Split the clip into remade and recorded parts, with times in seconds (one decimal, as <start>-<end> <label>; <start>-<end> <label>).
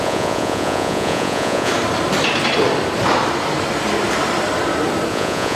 0.0-1.7 remade; 1.7-5.1 recorded; 5.1-5.6 remade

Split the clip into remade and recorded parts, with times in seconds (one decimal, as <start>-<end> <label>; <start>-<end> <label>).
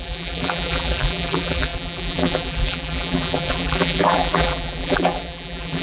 0.0-5.8 remade